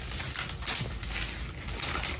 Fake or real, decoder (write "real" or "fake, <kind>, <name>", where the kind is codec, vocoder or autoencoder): real